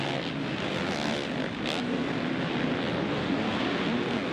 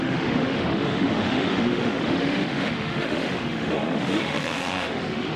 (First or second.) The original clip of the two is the first